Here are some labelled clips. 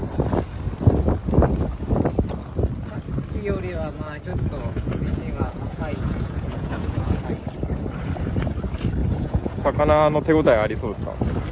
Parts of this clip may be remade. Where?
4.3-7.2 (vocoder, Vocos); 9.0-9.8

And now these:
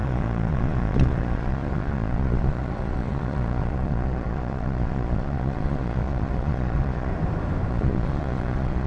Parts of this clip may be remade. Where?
0.0-7.1 (vocoder, Vocos); 7.7-8.9

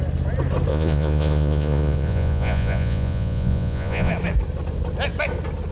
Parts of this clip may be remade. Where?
0.7-4.1 (vocoder, Vocos)